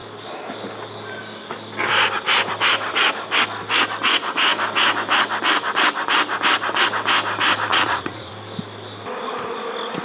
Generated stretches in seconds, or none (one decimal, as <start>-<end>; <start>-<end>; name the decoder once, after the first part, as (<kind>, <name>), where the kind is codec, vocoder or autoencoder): 7.7-8.3 (vocoder, Vocos)